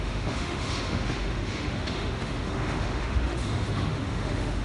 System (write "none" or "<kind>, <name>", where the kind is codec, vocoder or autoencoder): autoencoder, DAC-VAE